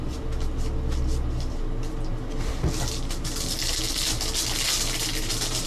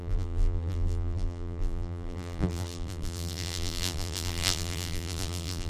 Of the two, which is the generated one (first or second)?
second